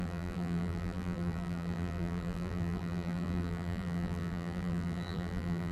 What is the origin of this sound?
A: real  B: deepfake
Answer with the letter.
B